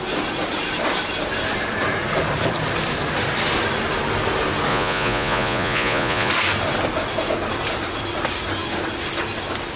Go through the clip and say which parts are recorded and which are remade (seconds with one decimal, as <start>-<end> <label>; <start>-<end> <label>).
0.0-4.7 recorded; 4.7-6.3 remade; 6.3-9.8 recorded